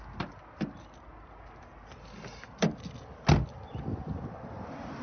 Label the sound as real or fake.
real